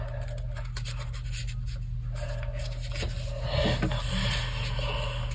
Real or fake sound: real